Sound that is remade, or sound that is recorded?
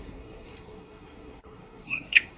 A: remade